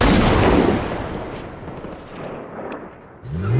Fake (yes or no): no